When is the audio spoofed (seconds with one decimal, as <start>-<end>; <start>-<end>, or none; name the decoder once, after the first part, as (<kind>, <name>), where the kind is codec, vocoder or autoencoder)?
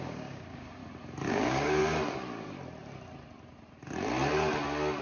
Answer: 0.0-0.8 (codec, DAC); 1.3-1.8